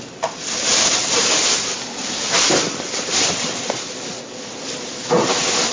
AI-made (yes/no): no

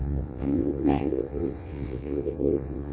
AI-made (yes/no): yes